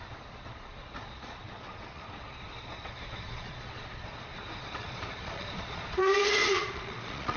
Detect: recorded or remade remade